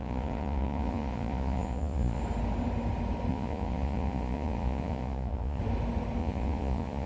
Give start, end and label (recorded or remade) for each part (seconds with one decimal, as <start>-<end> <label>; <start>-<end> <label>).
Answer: 0.0-2.2 remade; 2.2-3.3 recorded; 3.3-5.6 remade; 5.6-6.2 recorded; 6.2-7.1 remade